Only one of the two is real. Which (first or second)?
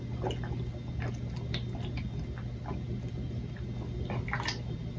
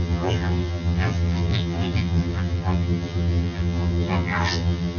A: first